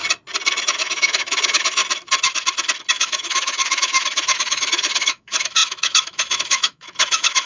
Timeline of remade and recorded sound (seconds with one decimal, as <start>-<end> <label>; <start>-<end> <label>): 0.0-0.6 recorded; 0.6-1.8 remade; 1.8-2.9 recorded; 2.9-7.5 remade